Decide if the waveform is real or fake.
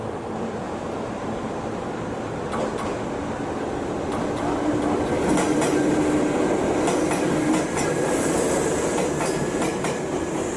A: real